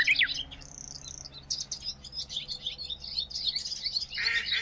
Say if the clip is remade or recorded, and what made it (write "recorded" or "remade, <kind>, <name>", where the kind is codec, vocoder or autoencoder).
recorded